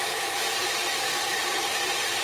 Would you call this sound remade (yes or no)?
yes